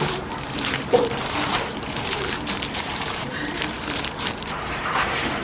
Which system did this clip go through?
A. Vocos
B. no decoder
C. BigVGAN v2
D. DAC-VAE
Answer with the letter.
C